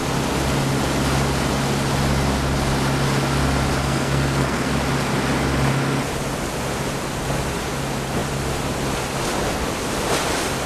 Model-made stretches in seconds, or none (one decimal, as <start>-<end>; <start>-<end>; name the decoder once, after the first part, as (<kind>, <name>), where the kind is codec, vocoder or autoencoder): 3.8-4.7 (codec, SNAC)